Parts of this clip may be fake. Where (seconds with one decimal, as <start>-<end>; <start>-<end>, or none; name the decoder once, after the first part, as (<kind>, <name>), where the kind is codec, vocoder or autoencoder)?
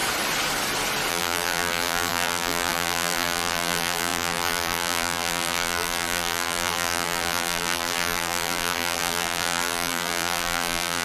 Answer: 1.1-11.0 (vocoder, BigVGAN v2)